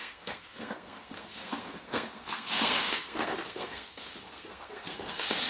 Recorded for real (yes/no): no